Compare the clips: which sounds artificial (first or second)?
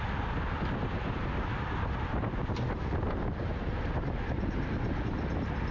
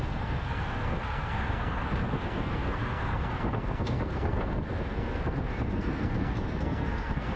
second